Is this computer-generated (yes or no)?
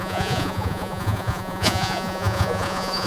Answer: yes